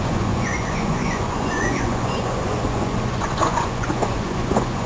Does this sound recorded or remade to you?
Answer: remade